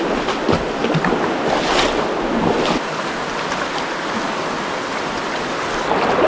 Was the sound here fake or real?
real